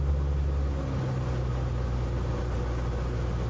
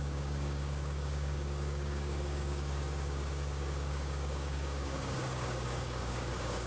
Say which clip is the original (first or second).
first